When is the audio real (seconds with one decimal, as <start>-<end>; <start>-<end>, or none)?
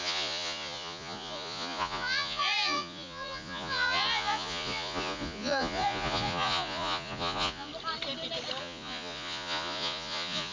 7.7-8.6